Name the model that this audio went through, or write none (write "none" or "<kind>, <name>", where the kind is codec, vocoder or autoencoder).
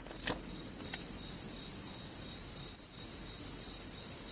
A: none